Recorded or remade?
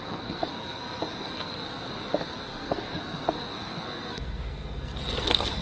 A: remade